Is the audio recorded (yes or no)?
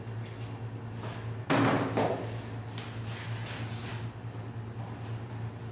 yes